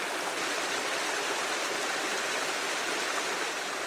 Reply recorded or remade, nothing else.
recorded